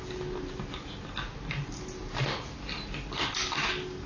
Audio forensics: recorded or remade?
recorded